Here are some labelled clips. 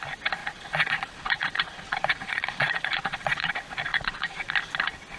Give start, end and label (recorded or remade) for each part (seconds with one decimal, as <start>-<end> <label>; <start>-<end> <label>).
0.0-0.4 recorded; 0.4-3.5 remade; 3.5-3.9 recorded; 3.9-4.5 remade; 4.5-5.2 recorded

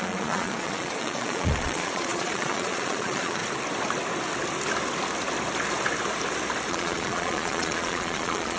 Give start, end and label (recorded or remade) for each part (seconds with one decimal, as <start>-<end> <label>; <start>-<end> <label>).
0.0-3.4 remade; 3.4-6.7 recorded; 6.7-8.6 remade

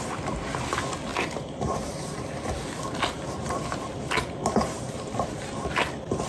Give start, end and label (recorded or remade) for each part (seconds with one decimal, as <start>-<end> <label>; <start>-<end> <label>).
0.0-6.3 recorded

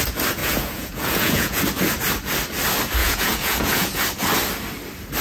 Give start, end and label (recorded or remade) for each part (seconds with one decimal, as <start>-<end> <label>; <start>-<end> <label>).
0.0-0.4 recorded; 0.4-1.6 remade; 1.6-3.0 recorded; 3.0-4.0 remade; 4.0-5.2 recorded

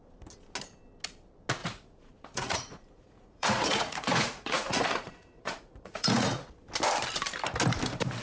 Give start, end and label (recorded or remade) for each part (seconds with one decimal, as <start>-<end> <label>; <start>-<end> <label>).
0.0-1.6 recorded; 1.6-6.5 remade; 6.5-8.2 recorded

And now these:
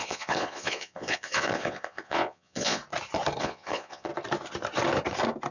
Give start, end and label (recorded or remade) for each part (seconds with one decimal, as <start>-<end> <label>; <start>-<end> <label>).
0.0-2.8 remade; 2.8-3.4 recorded; 3.4-4.1 remade; 4.1-5.5 recorded